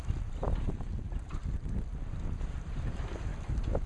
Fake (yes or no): no